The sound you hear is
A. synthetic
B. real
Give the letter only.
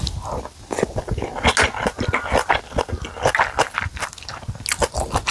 B